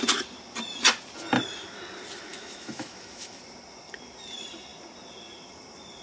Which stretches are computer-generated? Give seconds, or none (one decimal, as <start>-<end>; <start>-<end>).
2.3-3.4